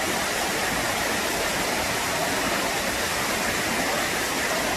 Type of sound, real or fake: real